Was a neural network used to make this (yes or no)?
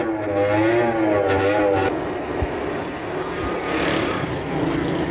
no